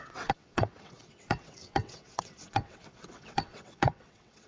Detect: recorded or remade remade